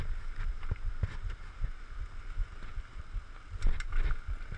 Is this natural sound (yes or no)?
yes